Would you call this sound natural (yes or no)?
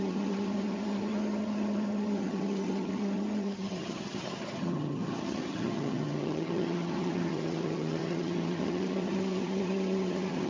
no